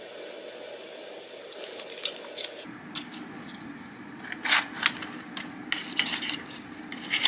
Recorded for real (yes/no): no